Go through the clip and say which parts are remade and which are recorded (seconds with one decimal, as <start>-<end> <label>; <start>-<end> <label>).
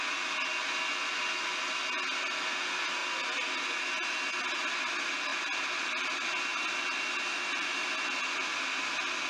0.0-5.3 recorded; 5.3-5.9 remade; 5.9-9.3 recorded